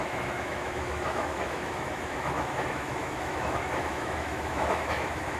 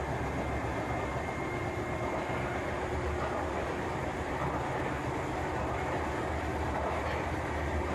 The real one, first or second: second